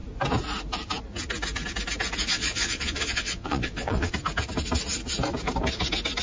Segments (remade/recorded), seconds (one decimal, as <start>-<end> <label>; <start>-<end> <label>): 0.0-2.3 recorded; 2.3-4.1 remade; 4.1-6.2 recorded